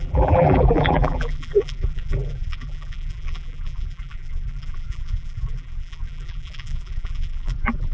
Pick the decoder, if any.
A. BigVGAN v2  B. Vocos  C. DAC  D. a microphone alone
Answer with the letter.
A